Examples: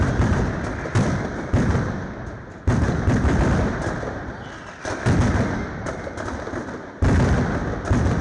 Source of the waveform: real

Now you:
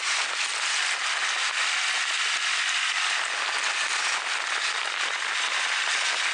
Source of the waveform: real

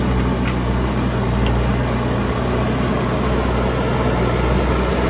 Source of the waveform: real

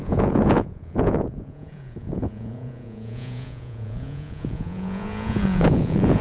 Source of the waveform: fake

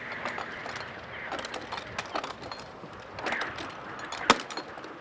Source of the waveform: real